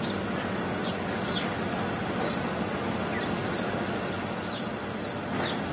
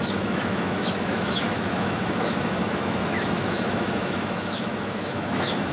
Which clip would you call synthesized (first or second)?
second